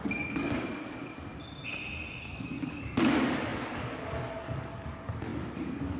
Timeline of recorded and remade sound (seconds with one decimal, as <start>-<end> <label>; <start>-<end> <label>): 0.0-1.3 remade; 1.3-2.2 recorded; 2.2-6.0 remade